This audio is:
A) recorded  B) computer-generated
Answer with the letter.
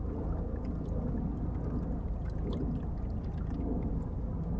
A